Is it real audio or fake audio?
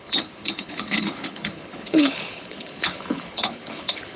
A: fake